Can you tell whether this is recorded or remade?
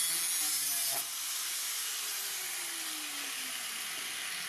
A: recorded